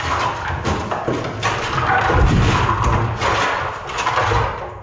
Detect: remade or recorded recorded